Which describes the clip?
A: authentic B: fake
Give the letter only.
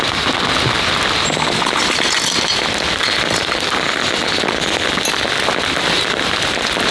A